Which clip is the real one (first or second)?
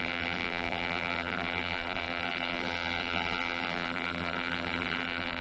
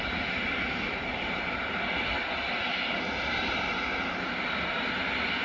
second